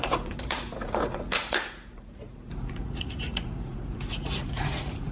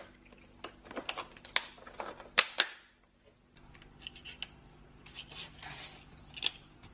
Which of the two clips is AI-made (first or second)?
first